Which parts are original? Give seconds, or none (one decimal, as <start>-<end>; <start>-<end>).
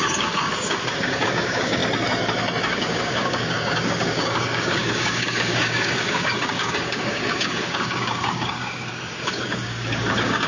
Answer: 1.8-2.6